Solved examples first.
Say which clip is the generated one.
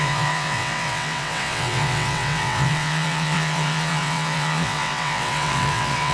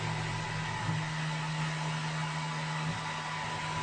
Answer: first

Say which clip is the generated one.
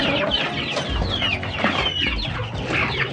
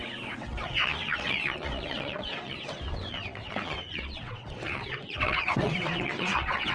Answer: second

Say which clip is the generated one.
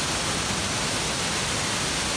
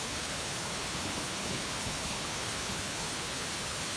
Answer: second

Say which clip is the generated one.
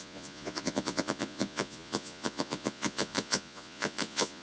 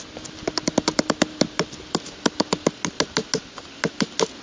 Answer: first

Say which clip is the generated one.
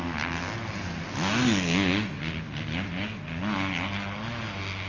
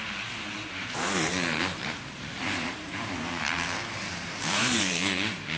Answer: second